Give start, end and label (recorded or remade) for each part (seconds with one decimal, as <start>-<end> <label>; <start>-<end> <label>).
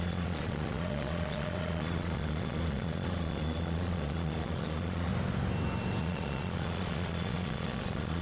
0.0-5.1 remade; 5.1-6.0 recorded; 6.0-8.2 remade